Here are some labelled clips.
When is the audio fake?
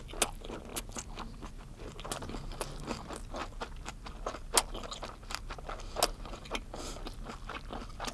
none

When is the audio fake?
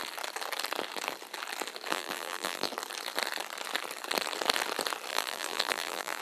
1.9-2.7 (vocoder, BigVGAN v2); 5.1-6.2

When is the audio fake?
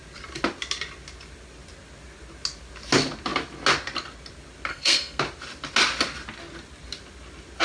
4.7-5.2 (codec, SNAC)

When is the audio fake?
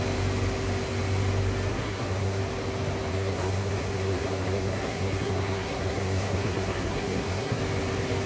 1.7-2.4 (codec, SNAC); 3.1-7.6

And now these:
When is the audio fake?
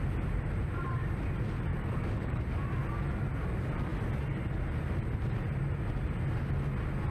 1.7-2.4 (codec, DAC)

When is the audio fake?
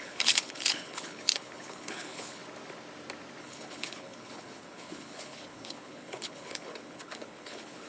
0.0-2.4 (codec, HILCodec); 3.4-7.9